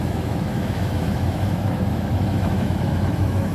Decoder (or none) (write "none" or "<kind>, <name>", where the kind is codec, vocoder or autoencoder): autoencoder, DAC-VAE